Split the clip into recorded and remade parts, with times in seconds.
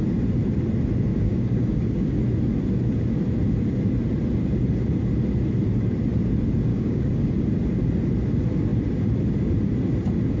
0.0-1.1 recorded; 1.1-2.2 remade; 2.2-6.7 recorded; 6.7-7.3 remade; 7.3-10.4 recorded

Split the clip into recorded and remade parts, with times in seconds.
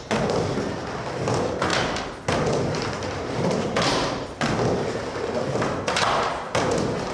0.0-7.1 recorded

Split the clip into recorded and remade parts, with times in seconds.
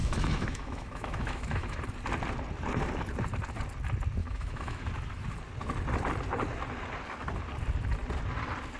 0.0-1.8 remade; 1.8-4.2 recorded; 4.2-4.9 remade; 4.9-8.8 recorded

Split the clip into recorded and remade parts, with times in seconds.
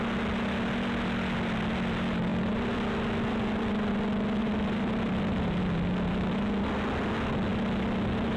0.0-2.3 recorded; 2.3-3.9 remade; 3.9-4.4 recorded; 4.4-5.6 remade; 5.6-8.4 recorded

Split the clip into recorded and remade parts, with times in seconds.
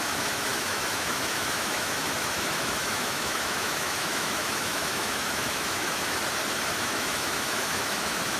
0.0-6.2 remade; 6.2-6.8 recorded; 6.8-8.4 remade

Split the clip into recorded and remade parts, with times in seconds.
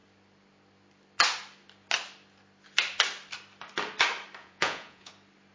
0.0-4.4 recorded; 4.4-5.1 remade; 5.1-5.5 recorded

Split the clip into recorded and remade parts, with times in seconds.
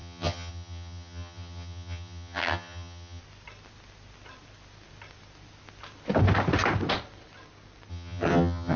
0.0-3.2 remade; 3.2-7.9 recorded; 7.9-8.8 remade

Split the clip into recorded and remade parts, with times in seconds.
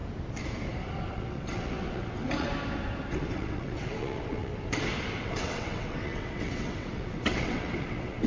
0.0-1.1 recorded; 1.1-2.5 remade; 2.5-3.1 recorded; 3.1-4.5 remade; 4.5-5.2 recorded; 5.2-8.3 remade